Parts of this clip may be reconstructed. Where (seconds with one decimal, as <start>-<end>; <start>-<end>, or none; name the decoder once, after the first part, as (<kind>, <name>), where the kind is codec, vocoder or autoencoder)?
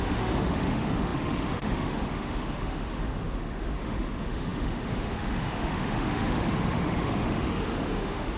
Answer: 0.0-8.4 (autoencoder, DAC-VAE)